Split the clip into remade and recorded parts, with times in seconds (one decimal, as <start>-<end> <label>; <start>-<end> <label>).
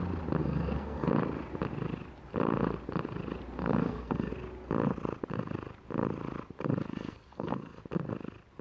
0.0-0.4 recorded; 0.4-1.1 remade; 1.1-3.6 recorded; 3.6-4.3 remade; 4.3-6.9 recorded; 6.9-7.8 remade; 7.8-8.6 recorded